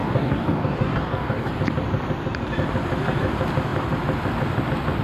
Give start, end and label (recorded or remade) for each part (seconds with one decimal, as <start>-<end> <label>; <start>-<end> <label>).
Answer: 0.0-1.5 remade; 1.5-5.0 recorded